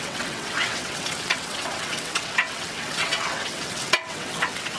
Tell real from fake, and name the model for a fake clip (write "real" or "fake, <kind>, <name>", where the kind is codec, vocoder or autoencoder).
fake, vocoder, WaveNeXt